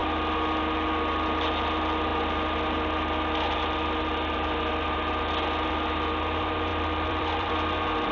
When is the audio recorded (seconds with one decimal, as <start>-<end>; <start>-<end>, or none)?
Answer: 0.0-6.7; 7.5-8.1